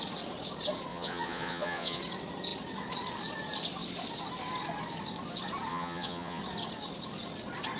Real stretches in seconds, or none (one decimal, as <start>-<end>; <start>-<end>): 0.0-0.9; 2.0-5.7; 6.4-7.8

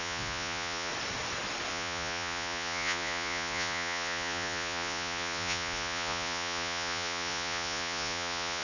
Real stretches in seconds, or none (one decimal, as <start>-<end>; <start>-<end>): 0.9-1.7

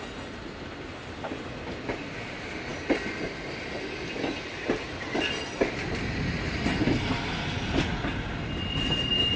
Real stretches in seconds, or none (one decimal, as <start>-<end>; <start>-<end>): 0.0-9.4

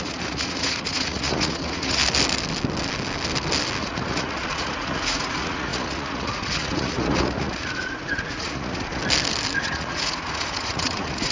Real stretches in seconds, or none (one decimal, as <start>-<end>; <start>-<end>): 2.0-3.8; 9.0-9.6